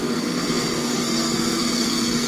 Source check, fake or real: fake